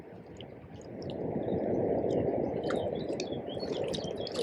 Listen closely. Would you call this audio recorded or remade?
recorded